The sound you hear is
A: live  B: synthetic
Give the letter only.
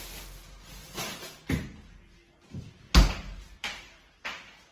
A